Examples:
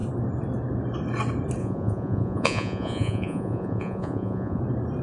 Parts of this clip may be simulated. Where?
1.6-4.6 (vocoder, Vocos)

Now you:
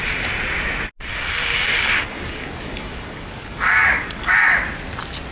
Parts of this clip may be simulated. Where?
1.1-4.3 (codec, DAC)

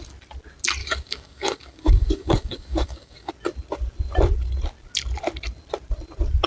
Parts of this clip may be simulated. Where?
0.8-3.3 (codec, DAC)

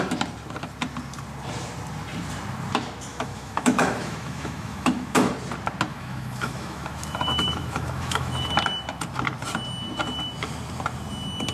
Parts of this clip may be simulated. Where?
3.1-5.3 (autoencoder, DAC-VAE); 5.9-8.5

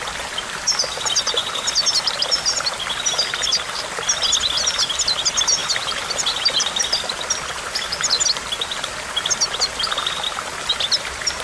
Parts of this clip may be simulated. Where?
5.6-6.8 (vocoder, BigVGAN v2)

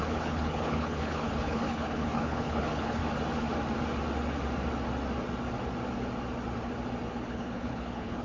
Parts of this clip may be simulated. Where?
0.0-3.0 (codec, HILCodec); 7.1-8.2

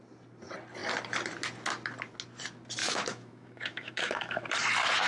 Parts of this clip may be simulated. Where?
2.8-4.5 (autoencoder, DAC-VAE)

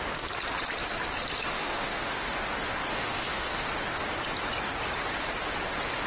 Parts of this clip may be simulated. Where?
1.4-2.3 (autoencoder, DAC-VAE); 2.9-3.7